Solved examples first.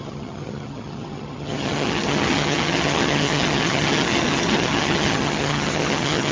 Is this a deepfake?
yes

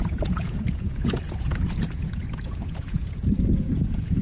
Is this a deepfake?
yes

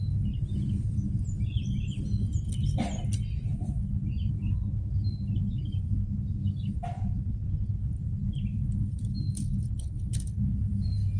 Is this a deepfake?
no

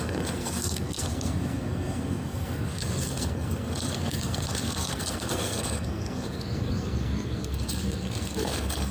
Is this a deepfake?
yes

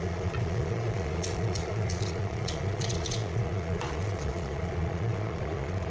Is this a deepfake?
yes